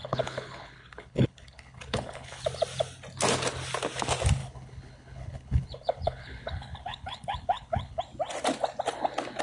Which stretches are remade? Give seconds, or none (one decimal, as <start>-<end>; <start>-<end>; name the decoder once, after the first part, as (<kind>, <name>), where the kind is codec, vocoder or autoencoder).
0.0-2.4 (codec, HILCodec); 4.4-8.0